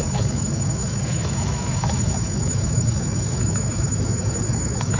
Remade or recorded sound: remade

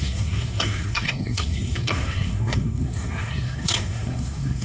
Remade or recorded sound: remade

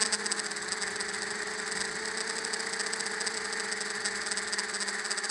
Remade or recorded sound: recorded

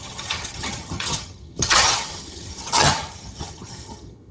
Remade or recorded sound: remade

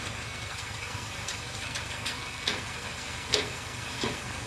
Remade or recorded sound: remade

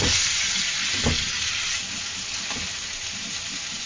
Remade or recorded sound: recorded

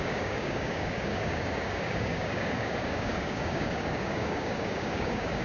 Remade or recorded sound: remade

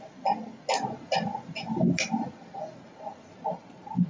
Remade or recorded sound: recorded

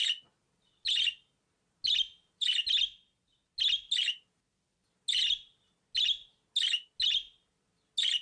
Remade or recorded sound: recorded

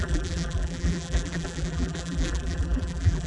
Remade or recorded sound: remade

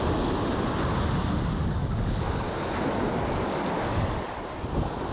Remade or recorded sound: recorded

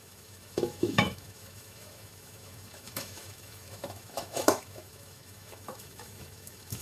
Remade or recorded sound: remade